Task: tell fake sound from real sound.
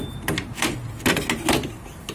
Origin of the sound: real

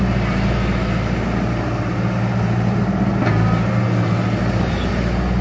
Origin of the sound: real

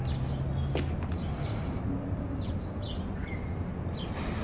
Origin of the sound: real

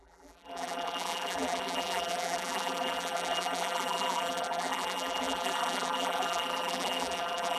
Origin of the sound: fake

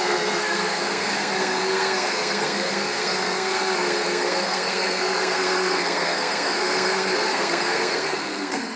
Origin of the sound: fake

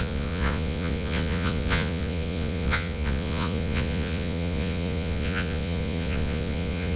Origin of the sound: fake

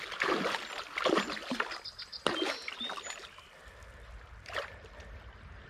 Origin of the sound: real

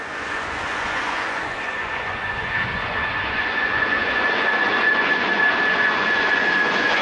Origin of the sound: fake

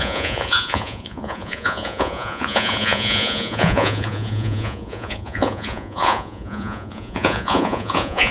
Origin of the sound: fake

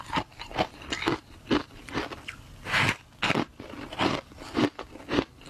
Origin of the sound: real